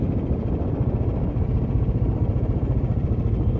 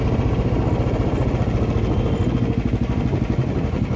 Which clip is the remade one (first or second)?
first